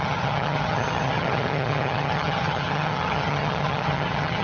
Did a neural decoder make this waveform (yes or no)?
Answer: yes